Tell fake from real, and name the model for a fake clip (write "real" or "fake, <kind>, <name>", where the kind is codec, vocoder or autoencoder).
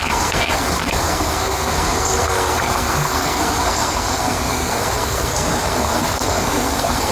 fake, codec, SNAC